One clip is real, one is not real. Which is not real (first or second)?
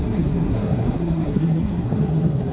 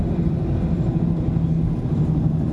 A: first